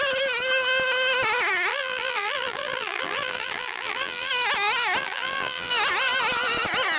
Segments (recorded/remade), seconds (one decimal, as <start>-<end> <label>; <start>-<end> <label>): 0.0-1.7 recorded; 1.7-4.3 remade; 4.3-5.0 recorded; 5.0-5.7 remade; 5.7-7.0 recorded